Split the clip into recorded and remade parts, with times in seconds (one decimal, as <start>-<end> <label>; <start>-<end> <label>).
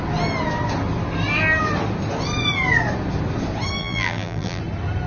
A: 0.0-3.8 recorded; 3.8-4.6 remade; 4.6-5.1 recorded